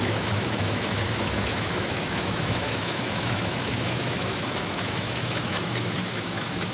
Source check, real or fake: fake